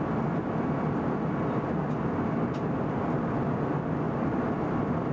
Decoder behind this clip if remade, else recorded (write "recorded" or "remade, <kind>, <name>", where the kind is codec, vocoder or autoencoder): recorded